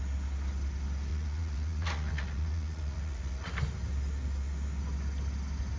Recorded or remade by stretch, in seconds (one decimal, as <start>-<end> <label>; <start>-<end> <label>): 0.0-1.1 recorded; 1.1-3.5 remade; 3.5-5.8 recorded